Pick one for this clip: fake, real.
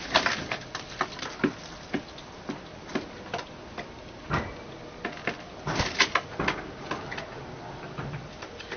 real